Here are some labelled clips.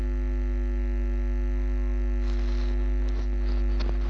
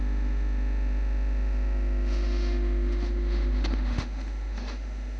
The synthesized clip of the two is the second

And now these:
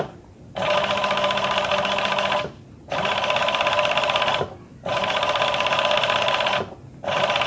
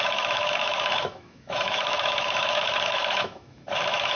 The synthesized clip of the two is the second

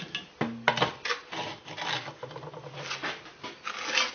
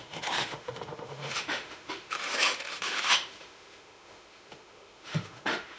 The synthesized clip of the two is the second